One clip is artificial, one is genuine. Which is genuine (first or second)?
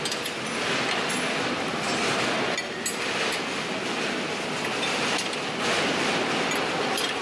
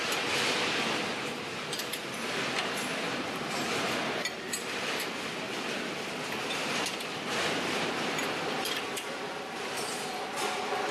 first